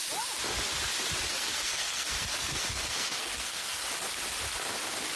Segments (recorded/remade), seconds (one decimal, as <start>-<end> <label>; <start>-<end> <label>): 0.0-1.3 recorded; 1.3-3.8 remade; 3.8-5.2 recorded